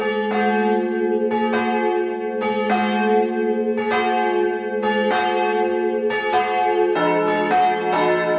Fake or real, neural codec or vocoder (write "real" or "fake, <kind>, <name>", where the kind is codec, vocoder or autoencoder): real